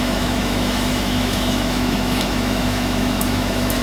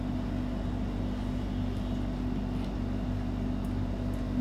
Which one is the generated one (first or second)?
first